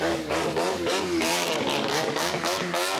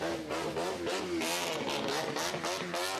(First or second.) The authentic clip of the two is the second